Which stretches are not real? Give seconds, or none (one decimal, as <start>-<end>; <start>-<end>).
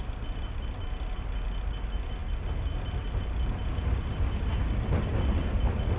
none